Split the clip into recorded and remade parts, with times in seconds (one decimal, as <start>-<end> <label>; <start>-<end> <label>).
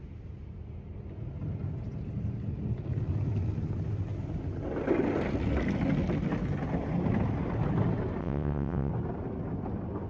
0.0-8.2 recorded; 8.2-8.9 remade; 8.9-10.1 recorded